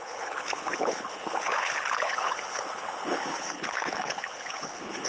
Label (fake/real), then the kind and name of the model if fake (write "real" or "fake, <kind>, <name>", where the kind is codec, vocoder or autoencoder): fake, codec, HILCodec